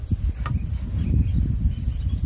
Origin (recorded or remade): recorded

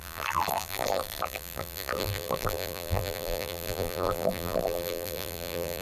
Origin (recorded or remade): remade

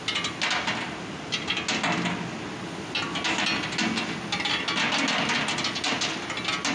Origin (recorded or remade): recorded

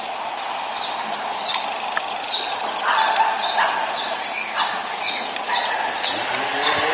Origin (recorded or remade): recorded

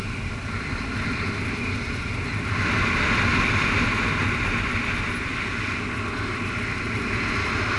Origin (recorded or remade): recorded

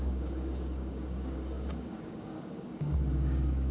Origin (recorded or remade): remade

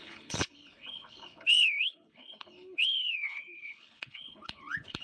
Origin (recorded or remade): remade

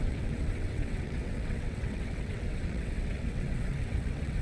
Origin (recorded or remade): remade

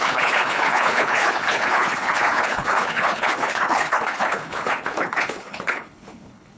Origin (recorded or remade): remade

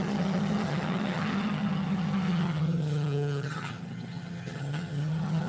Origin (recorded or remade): remade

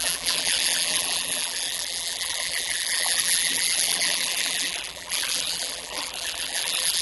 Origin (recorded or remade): remade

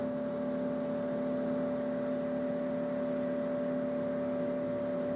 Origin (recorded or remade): recorded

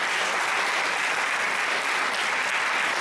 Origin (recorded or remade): recorded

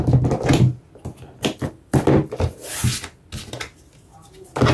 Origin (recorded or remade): recorded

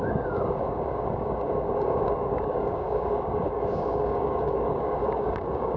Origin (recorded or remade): remade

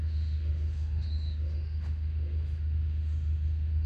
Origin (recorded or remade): remade